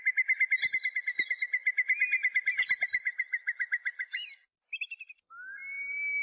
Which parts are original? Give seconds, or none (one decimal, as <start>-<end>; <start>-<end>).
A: 0.0-6.2